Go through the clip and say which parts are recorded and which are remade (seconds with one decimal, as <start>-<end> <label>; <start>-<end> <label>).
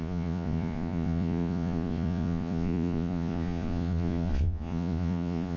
0.0-5.6 remade